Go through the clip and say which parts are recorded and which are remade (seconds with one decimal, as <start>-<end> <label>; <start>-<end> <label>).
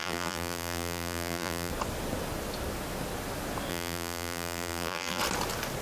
0.0-1.7 remade; 1.7-3.7 recorded; 3.7-5.2 remade; 5.2-5.8 recorded